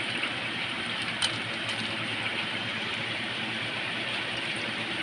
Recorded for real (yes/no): no